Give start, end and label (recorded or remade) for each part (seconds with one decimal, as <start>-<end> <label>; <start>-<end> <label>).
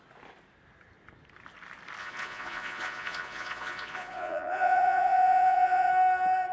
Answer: 0.0-2.0 recorded; 2.0-5.9 remade; 5.9-6.5 recorded